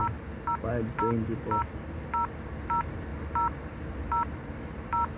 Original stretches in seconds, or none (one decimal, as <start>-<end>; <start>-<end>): 0.0-5.2